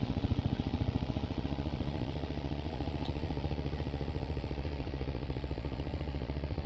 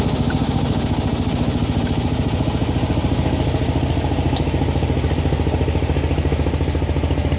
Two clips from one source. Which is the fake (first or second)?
first